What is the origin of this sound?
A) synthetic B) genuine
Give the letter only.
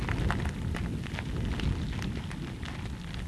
B